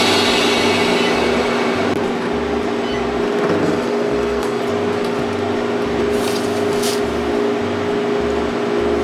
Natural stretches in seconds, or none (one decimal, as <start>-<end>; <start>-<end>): 0.0-3.6; 4.6-9.0